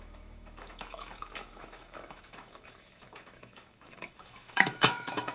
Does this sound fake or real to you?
fake